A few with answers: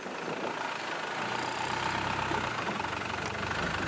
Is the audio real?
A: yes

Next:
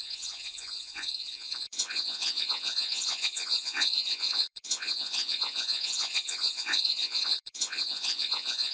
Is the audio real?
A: no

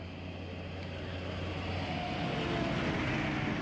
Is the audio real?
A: yes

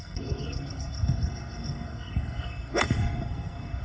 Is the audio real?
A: no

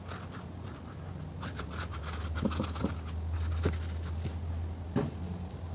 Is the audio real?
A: yes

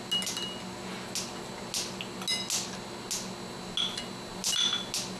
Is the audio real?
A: yes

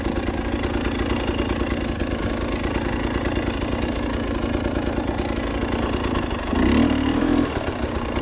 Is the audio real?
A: yes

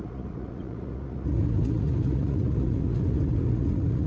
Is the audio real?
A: no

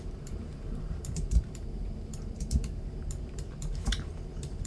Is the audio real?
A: no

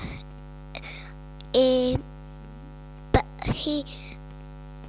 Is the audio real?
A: yes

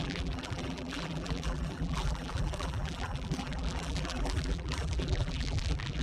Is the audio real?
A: no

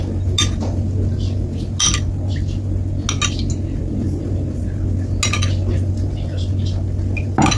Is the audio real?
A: yes